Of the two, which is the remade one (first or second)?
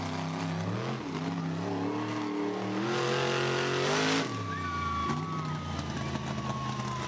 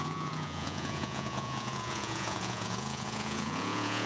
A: second